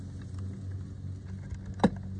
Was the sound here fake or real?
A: real